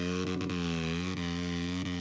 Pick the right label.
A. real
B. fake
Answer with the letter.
B